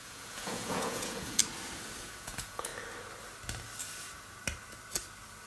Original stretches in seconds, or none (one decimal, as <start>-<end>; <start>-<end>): 1.4-2.0; 2.7-5.5